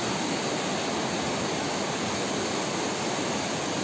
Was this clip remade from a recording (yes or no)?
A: no